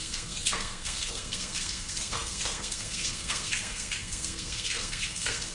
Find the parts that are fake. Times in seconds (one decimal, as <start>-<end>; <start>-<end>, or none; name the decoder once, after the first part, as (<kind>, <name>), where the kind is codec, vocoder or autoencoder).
0.0-5.5 (codec, SNAC)